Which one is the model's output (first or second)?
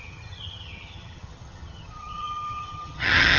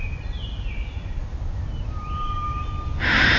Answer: first